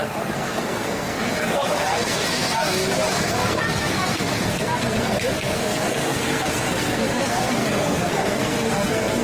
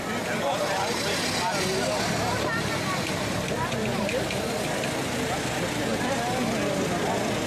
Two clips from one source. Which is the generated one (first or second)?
first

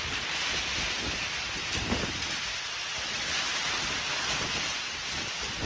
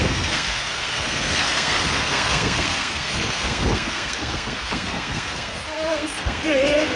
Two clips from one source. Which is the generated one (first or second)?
second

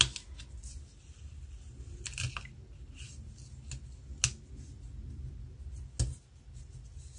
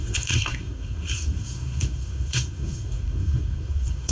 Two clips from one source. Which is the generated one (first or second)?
second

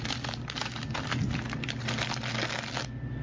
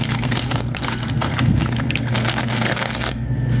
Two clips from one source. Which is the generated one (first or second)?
second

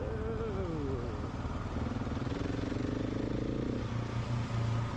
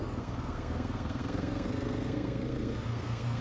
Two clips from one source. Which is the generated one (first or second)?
second